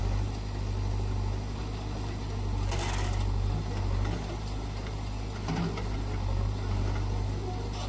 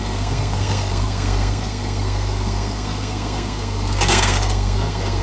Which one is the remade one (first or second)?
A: second